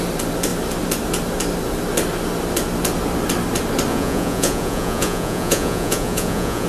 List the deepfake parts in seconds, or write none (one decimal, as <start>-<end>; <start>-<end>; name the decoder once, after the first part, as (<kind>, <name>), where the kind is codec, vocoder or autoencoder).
3.9-6.7 (vocoder, Vocos)